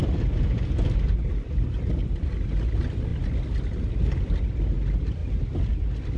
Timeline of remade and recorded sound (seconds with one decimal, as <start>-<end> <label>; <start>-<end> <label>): 0.0-6.2 recorded